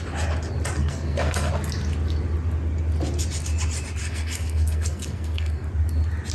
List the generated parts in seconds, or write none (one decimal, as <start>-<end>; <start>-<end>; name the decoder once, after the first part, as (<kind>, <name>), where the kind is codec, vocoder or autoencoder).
0.8-1.5 (codec, SNAC); 4.0-5.7